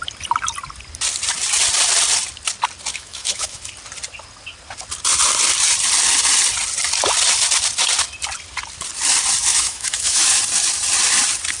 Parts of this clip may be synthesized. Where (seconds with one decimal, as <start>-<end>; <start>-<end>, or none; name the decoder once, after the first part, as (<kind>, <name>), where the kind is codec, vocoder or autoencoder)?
2.9-3.6 (autoencoder, DAC-VAE); 9.5-10.4

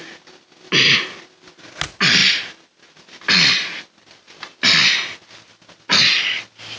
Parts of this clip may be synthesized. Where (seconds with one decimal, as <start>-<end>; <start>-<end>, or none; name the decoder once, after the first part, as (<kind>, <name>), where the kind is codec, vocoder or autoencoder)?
none

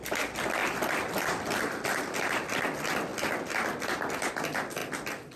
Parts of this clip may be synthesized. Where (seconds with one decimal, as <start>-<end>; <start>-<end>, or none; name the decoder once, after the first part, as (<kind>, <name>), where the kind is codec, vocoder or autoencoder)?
0.6-2.6 (vocoder, BigVGAN v2)

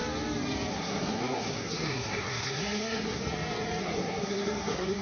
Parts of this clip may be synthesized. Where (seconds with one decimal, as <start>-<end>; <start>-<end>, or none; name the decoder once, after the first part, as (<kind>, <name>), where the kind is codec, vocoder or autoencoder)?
0.7-3.2 (codec, SNAC); 3.8-5.0

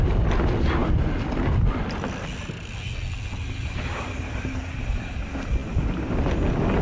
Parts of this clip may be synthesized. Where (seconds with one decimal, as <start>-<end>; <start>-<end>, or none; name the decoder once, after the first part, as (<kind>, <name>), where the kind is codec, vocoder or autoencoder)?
none

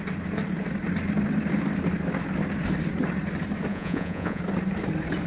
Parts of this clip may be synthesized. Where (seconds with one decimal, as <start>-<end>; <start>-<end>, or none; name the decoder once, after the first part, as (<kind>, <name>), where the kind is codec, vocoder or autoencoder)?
3.7-4.4 (vocoder, Vocos)

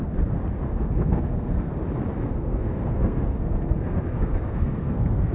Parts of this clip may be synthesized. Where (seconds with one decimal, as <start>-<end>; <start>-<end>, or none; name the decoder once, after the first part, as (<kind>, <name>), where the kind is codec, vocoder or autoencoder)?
0.7-1.7 (codec, SNAC); 2.3-5.3